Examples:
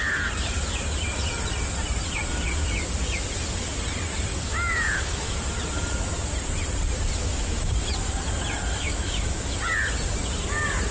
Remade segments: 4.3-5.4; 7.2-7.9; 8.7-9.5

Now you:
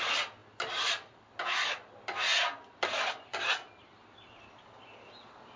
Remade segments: none

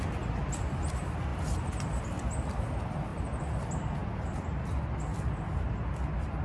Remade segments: 1.3-2.0; 3.1-3.6

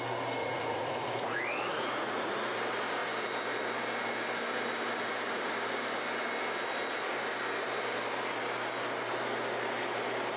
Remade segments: 0.4-2.5

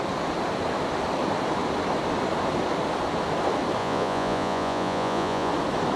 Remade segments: 3.8-5.5

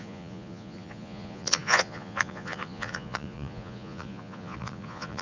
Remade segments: 0.0-5.2